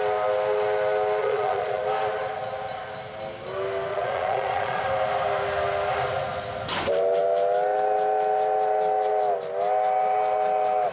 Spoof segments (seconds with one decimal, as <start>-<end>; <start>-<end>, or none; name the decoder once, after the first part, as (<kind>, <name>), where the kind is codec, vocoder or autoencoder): 1.2-1.8 (vocoder, Vocos); 3.9-4.8